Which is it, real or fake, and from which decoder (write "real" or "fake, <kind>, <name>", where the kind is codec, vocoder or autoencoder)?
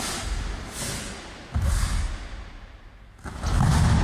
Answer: real